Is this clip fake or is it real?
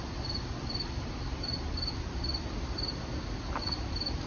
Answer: real